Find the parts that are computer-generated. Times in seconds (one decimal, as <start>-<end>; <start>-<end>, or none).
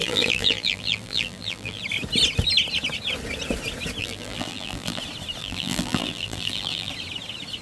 0.0-1.8; 4.0-5.0; 5.4-6.9